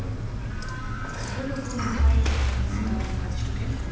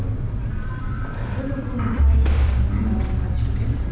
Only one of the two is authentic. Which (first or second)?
first